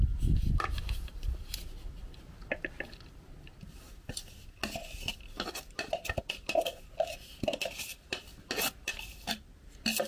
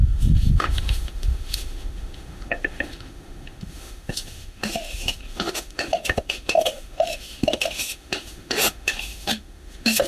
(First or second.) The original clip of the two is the first